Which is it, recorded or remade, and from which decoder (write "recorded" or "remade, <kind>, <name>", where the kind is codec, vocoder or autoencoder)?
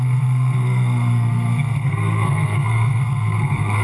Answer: remade, codec, SNAC